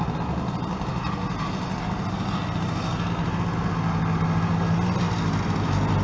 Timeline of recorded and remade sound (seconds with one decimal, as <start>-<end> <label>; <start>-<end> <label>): 0.0-6.0 recorded